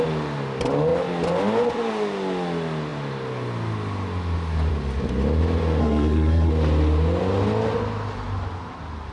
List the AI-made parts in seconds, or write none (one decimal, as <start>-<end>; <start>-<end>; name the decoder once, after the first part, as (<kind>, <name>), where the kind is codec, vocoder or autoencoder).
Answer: 5.8-6.5 (codec, SNAC)